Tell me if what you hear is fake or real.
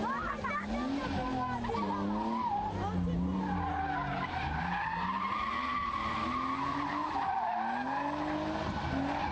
real